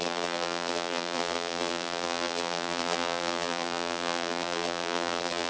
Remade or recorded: remade